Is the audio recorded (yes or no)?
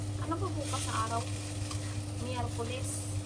yes